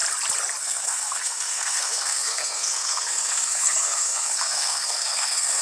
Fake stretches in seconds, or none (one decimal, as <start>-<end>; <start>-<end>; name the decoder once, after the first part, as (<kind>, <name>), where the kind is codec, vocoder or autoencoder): 0.6-5.6 (codec, SNAC)